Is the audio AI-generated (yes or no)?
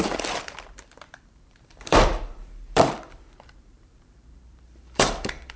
yes